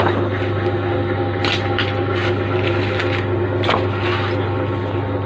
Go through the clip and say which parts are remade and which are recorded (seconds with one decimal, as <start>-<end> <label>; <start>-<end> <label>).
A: 0.0-5.3 recorded